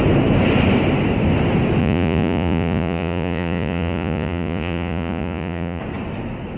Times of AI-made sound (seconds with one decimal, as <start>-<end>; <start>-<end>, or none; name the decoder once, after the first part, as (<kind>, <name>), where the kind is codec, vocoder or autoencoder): 1.8-5.8 (vocoder, Vocos)